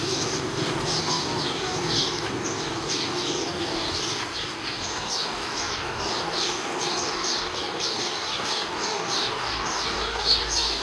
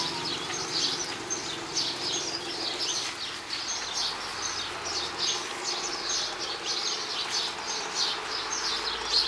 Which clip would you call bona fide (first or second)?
second